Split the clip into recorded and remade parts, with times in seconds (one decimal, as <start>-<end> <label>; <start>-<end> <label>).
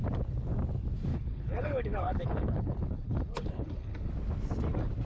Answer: 0.0-1.1 recorded; 1.1-4.1 remade; 4.1-5.0 recorded